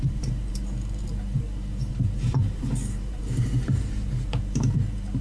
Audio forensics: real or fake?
fake